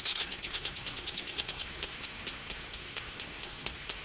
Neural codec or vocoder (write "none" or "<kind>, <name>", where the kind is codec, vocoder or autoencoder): codec, SNAC